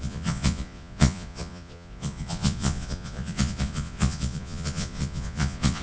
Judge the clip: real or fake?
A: fake